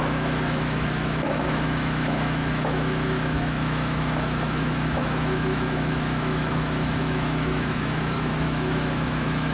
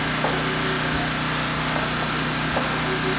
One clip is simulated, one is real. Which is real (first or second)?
second